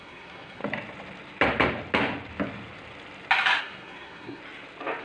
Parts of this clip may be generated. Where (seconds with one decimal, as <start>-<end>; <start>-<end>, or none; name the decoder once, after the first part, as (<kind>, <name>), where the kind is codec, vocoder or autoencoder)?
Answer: 0.0-0.6 (codec, SNAC); 3.6-4.4